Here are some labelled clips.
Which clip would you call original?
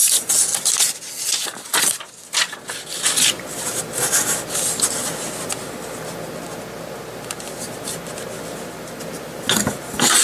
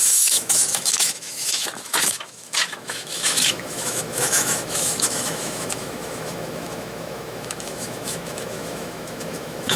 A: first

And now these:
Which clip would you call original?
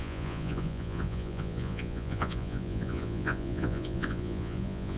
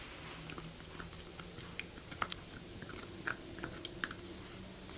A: second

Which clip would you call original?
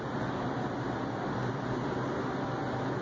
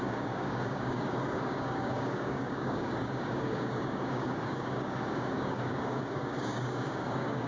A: first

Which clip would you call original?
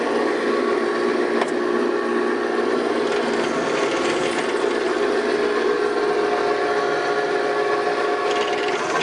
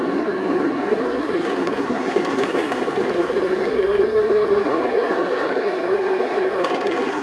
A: first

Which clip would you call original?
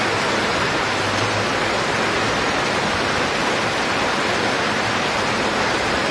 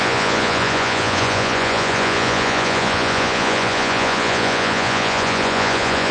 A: first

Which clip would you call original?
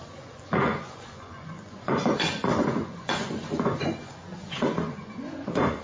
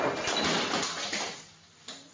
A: second